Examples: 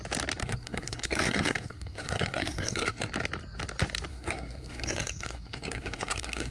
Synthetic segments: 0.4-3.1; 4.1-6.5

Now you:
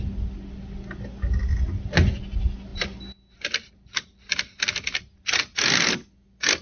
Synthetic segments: none

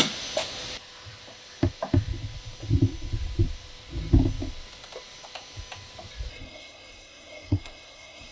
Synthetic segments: 6.3-8.3

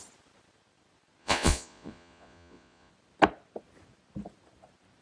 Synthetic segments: 1.2-2.9

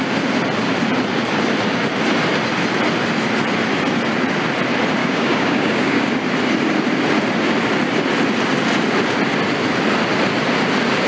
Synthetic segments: 5.0-6.1

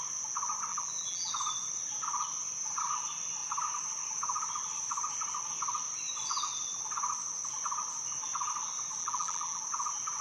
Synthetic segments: 0.7-1.3; 9.0-9.6

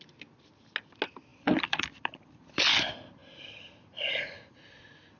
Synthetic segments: 1.3-2.6